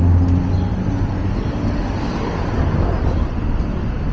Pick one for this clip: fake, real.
real